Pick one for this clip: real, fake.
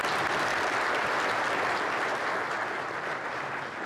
real